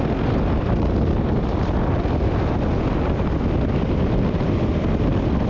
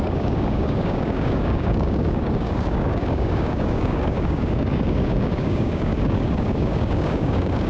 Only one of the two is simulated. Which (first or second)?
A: second